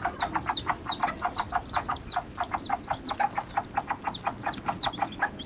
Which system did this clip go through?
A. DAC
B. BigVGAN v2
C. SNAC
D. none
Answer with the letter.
D